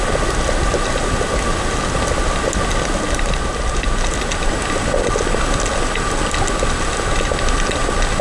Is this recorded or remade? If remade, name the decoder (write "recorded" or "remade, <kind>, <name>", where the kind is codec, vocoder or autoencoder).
recorded